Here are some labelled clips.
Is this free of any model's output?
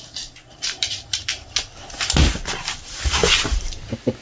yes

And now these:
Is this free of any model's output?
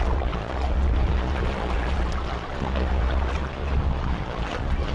no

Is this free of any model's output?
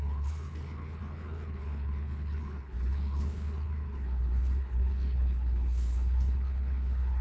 no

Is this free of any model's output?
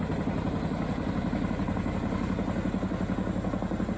yes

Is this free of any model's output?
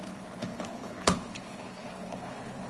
no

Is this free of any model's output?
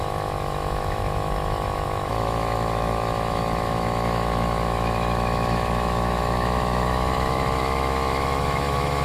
no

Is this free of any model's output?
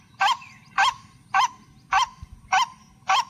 yes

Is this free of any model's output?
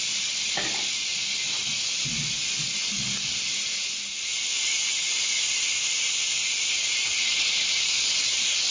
yes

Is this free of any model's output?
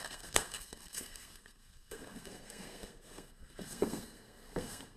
no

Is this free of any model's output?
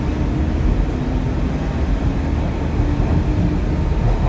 yes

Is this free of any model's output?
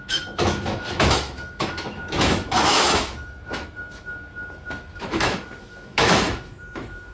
no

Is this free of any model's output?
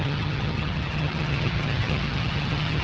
no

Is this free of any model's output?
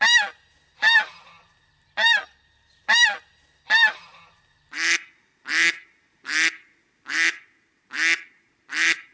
yes